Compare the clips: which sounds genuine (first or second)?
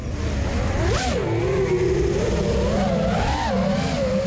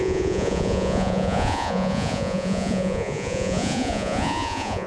first